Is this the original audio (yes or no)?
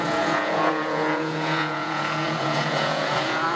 no